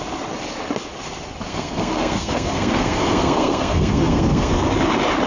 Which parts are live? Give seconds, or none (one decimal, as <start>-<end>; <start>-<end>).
0.0-1.5; 4.5-5.3